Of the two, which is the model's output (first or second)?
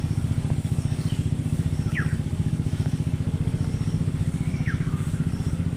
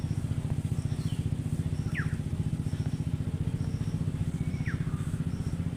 first